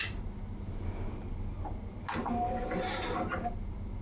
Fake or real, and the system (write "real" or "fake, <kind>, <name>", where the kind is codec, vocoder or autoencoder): real